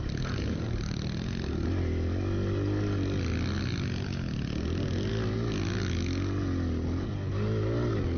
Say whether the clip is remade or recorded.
recorded